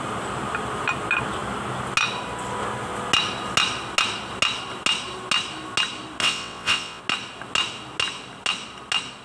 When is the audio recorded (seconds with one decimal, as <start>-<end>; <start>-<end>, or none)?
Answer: 0.0-6.2; 7.0-9.2